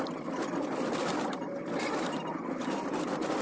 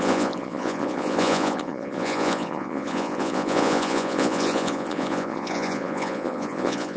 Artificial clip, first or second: second